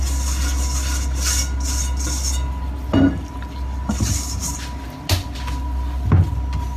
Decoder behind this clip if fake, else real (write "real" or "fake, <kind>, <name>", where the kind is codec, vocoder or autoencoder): real